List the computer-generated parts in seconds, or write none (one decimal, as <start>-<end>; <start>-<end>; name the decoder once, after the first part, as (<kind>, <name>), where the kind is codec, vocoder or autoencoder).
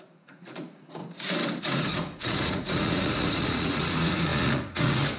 0.0-1.0 (vocoder, Vocos); 1.6-5.2